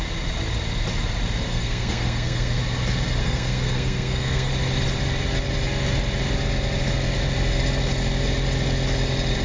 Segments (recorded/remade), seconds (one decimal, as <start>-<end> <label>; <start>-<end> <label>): 0.0-1.5 recorded; 1.5-2.6 remade; 2.6-3.2 recorded; 3.2-4.5 remade; 4.5-9.4 recorded